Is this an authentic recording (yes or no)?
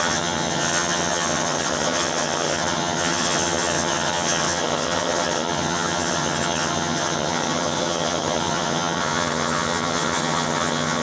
no